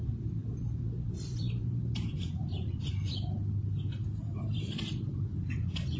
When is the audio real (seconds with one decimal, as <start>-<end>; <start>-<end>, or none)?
none